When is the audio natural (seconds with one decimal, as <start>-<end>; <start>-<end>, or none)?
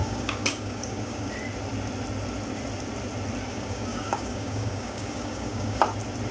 1.3-3.5; 5.8-6.3